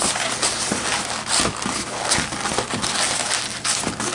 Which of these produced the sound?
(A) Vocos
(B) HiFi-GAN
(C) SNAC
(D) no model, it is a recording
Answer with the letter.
D